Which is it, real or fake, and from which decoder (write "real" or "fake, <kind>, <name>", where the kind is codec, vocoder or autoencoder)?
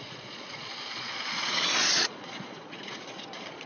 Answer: fake, vocoder, Vocos